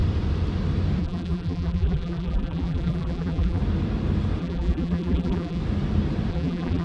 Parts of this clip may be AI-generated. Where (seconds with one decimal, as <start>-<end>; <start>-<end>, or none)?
1.0-3.6; 4.4-5.6; 6.3-6.8